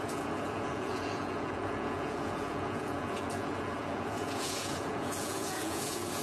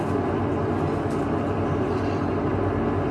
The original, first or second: second